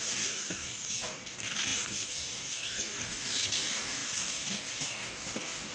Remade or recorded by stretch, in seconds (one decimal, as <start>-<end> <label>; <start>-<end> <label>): 0.0-5.7 remade